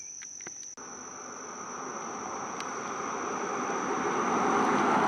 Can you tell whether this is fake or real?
real